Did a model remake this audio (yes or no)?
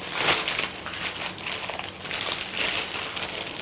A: no